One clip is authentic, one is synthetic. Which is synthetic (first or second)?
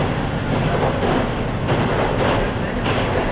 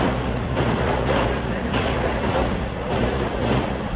second